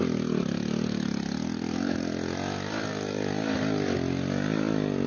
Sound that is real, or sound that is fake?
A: real